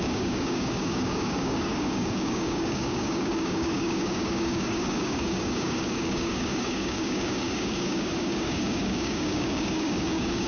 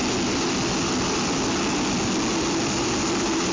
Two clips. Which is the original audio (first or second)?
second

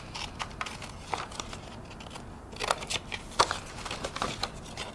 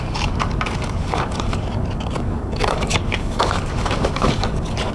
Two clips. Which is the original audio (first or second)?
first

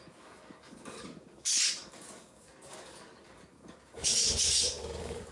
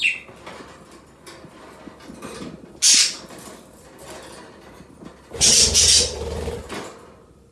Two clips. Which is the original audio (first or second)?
second